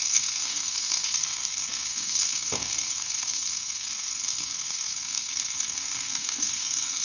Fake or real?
fake